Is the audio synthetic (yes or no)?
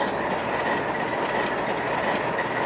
no